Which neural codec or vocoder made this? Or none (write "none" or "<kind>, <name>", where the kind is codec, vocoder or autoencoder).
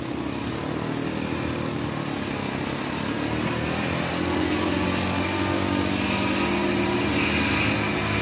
none